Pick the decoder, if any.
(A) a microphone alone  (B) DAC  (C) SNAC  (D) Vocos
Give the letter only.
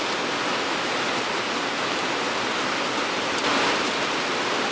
A